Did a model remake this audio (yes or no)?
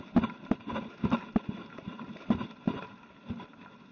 no